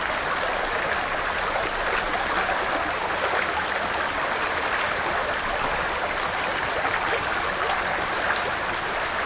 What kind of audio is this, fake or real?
real